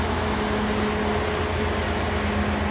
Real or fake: real